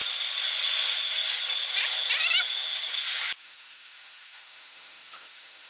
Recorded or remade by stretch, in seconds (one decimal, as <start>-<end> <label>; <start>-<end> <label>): 0.0-3.4 recorded; 3.4-5.7 remade

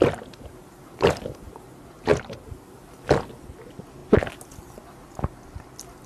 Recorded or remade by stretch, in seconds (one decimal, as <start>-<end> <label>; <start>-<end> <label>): 0.0-2.1 recorded; 2.1-2.9 remade; 2.9-6.1 recorded

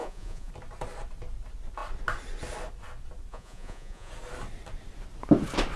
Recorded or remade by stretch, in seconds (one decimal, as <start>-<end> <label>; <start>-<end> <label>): 0.0-0.5 remade; 0.5-3.3 recorded; 3.3-4.1 remade; 4.1-5.8 recorded

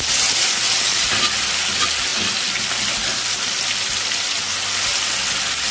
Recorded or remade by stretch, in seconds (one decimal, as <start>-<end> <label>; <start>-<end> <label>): 0.0-5.7 recorded